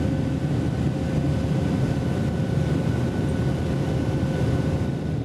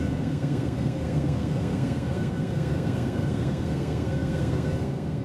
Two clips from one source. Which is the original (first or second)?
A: first